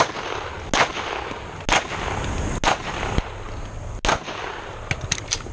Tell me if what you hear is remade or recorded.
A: recorded